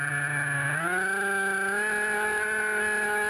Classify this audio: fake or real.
real